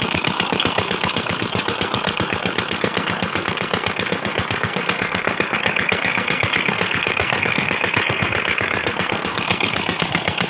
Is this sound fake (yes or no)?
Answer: yes